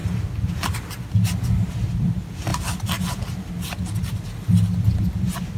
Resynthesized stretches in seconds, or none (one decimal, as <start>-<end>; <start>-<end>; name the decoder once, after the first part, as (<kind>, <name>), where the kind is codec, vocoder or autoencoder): 0.0-0.8 (vocoder, BigVGAN v2); 2.5-3.5